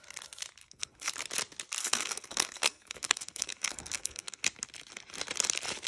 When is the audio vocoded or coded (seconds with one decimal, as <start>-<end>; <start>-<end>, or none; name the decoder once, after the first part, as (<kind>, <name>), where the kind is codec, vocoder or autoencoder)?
0.6-1.1 (codec, SNAC); 1.8-4.4